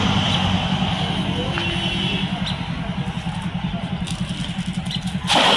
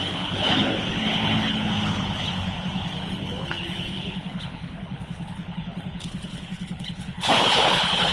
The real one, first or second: first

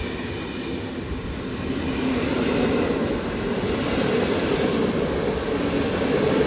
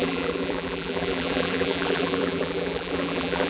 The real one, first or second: first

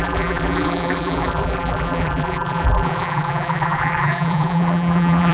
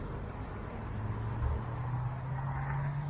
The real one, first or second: second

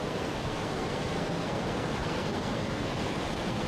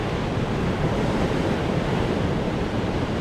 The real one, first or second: second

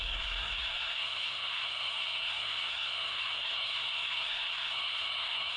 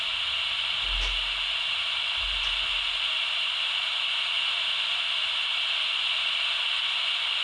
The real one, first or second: second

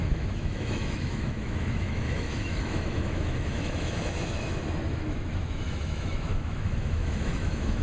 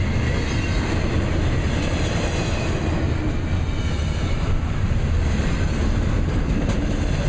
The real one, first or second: second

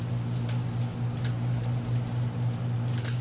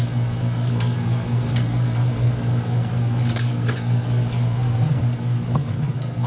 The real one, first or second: first